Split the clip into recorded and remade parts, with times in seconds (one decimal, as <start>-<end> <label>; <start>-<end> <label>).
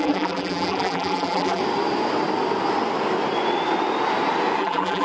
0.0-1.6 remade; 1.6-4.6 recorded; 4.6-5.0 remade